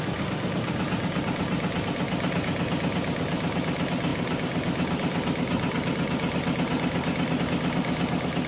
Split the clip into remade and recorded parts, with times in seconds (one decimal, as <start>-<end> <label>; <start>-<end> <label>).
0.0-8.5 recorded